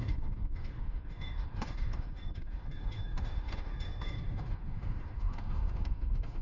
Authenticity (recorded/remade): remade